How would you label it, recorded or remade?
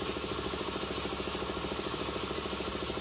recorded